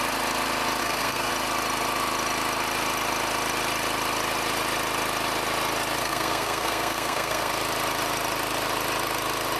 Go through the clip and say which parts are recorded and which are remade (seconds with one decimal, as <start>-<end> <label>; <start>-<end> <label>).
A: 0.0-0.8 recorded; 0.8-1.3 remade; 1.3-6.0 recorded; 6.0-7.5 remade; 7.5-9.6 recorded